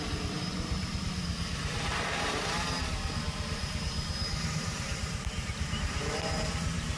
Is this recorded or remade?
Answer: remade